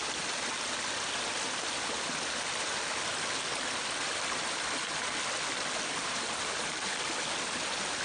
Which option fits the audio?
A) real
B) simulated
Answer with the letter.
A